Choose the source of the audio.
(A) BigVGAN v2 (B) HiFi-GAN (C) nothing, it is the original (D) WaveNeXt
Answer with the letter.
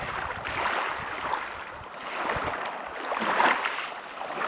C